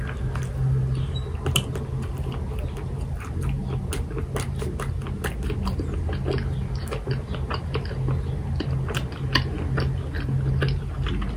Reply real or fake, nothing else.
real